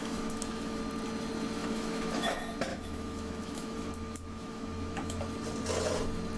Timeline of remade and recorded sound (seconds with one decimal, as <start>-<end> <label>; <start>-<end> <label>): 0.0-0.8 remade; 0.8-1.6 recorded; 1.6-2.3 remade; 2.3-2.7 recorded; 2.7-5.2 remade; 5.2-6.4 recorded